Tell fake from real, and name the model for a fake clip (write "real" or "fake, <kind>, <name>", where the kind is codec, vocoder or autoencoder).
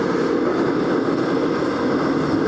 real